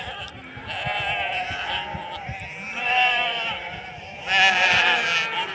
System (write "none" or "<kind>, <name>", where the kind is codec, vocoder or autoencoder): none